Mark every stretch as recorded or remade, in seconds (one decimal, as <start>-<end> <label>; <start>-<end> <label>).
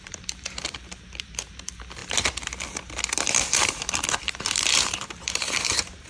0.0-2.0 remade; 2.0-4.2 recorded; 4.2-6.1 remade